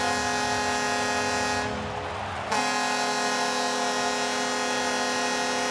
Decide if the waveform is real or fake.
real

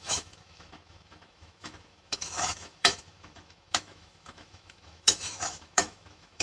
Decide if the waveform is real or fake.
fake